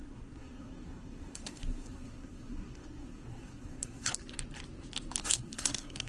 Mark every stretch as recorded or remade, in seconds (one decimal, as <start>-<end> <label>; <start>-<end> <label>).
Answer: 0.0-4.1 remade; 4.1-5.2 recorded; 5.2-6.1 remade